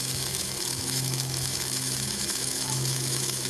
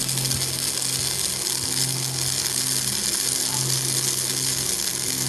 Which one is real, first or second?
second